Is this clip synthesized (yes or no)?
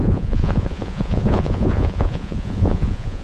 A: yes